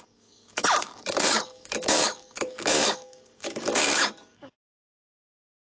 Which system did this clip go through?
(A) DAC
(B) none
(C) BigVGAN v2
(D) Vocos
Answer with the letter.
A